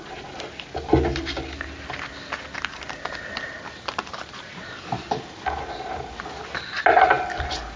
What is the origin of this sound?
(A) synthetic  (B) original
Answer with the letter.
B